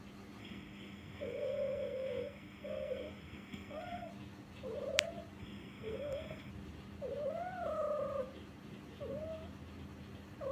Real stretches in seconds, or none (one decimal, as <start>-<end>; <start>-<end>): 0.0-0.4; 4.1-5.4; 6.5-10.5